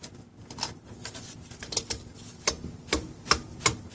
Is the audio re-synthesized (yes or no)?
no